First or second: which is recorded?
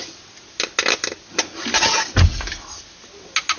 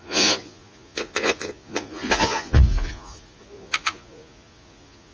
first